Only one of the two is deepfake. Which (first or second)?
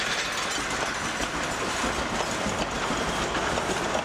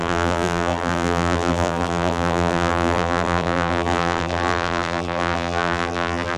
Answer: second